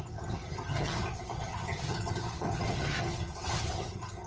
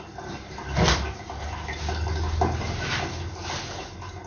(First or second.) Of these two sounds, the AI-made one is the first